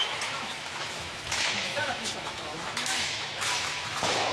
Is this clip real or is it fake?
fake